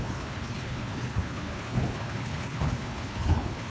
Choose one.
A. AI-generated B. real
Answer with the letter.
A